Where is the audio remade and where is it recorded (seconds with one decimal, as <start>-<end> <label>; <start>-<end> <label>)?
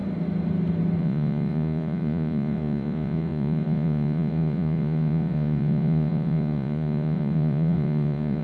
0.0-1.0 recorded; 1.0-8.4 remade